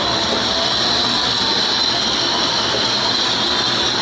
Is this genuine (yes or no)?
yes